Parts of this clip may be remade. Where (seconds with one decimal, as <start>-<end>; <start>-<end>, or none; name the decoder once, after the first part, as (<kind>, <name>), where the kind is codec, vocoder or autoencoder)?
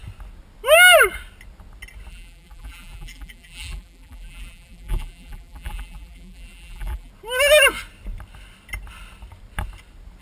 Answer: 2.1-7.1 (vocoder, BigVGAN v2)